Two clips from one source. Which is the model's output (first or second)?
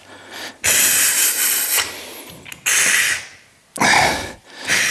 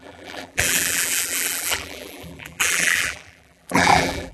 second